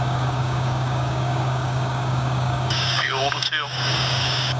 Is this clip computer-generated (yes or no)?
yes